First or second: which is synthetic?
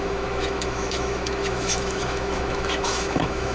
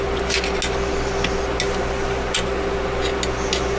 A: first